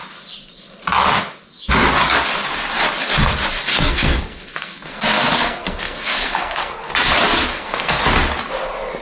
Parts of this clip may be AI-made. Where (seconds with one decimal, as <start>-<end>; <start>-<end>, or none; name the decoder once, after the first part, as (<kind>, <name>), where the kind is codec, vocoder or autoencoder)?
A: 3.7-6.9 (codec, SNAC); 7.5-8.0